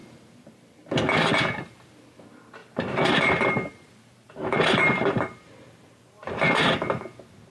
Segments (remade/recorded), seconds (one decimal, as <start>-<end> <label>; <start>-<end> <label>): 0.0-2.6 recorded; 2.6-6.6 remade; 6.6-7.5 recorded